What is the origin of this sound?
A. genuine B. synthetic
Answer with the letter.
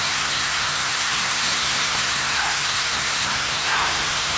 B